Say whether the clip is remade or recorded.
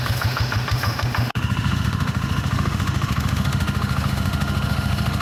remade